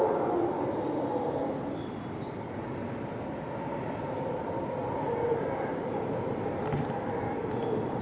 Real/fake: real